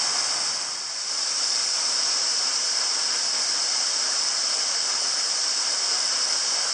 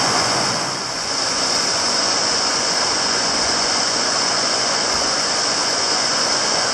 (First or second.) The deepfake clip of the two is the second